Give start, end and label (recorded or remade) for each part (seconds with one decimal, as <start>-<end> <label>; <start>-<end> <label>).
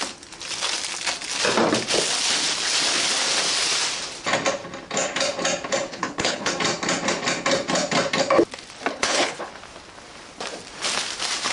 0.0-5.9 recorded; 5.9-6.5 remade; 6.5-8.9 recorded; 8.9-9.5 remade; 9.5-11.5 recorded